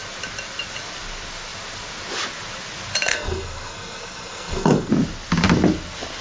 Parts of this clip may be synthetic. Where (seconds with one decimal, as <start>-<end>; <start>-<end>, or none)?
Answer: 3.1-4.9